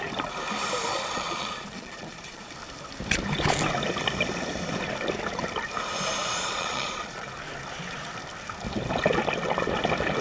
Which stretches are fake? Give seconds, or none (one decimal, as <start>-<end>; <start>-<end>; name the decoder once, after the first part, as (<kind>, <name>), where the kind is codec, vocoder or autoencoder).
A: 0.9-2.5 (vocoder, Vocos); 6.2-7.3